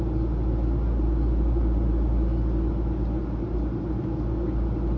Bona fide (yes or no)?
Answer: yes